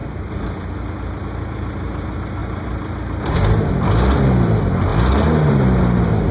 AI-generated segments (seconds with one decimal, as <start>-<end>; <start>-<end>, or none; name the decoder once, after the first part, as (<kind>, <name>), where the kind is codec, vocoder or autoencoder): none